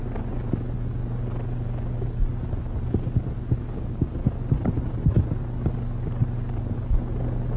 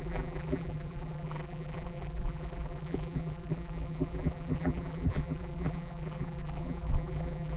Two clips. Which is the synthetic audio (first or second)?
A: second